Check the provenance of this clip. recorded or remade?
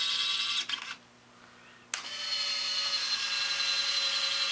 recorded